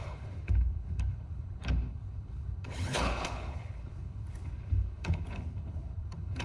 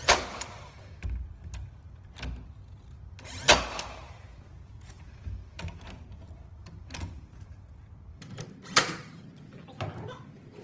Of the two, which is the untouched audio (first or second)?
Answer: second